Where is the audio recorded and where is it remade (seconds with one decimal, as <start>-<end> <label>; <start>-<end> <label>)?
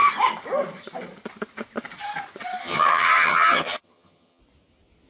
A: 0.0-2.6 recorded; 2.6-4.4 remade; 4.4-5.1 recorded